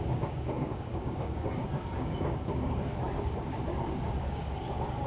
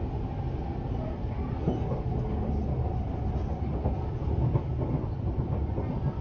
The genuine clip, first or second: second